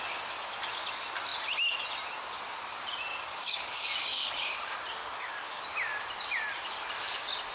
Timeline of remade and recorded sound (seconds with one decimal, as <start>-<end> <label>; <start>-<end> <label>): 0.0-3.1 recorded; 3.1-4.5 remade; 4.5-5.0 recorded; 5.0-5.6 remade; 5.6-7.5 recorded